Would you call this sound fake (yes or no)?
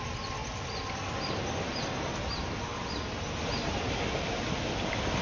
no